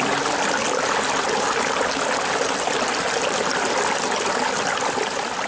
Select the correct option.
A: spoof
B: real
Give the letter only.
B